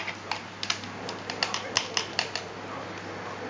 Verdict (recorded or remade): recorded